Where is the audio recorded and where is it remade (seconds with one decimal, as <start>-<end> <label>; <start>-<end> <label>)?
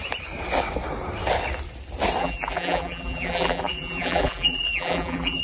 0.0-2.2 recorded; 2.2-5.4 remade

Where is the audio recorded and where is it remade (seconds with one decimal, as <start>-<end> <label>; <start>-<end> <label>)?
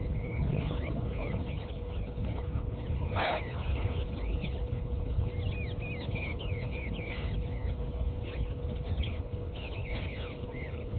0.0-5.3 remade; 5.3-6.0 recorded; 6.0-11.0 remade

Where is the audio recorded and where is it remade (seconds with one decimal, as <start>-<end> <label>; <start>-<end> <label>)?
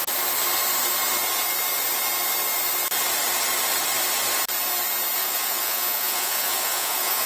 0.0-5.2 recorded; 5.2-7.3 remade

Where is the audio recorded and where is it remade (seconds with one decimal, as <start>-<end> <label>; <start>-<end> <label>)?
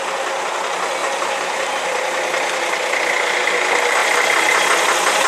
0.0-1.0 recorded; 1.0-1.7 remade; 1.7-4.0 recorded; 4.0-4.6 remade; 4.6-5.3 recorded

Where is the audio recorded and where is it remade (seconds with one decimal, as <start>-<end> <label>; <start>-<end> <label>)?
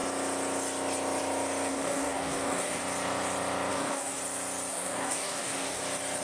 0.0-1.7 recorded; 1.7-2.8 remade; 2.8-3.7 recorded; 3.7-4.2 remade; 4.2-4.7 recorded; 4.7-5.8 remade; 5.8-6.2 recorded